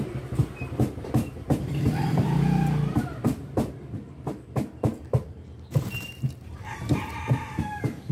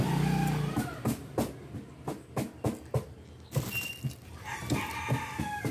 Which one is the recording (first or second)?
second